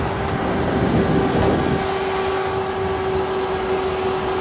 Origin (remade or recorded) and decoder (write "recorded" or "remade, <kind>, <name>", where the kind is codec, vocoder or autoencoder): recorded